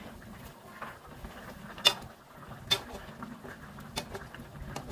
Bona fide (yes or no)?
yes